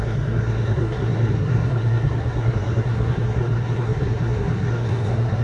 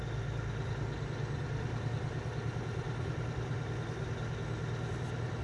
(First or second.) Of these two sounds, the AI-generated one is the first